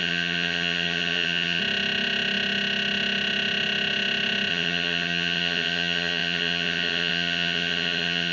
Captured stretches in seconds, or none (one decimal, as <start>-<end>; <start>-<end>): 1.6-4.5